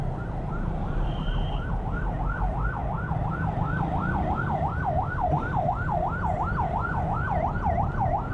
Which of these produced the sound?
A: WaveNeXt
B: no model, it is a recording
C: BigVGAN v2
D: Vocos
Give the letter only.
C